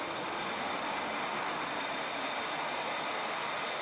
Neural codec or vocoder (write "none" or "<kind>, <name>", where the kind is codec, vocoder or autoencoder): none